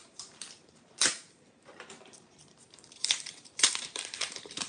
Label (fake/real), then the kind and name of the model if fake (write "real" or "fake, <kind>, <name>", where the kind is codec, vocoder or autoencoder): fake, vocoder, BigVGAN v2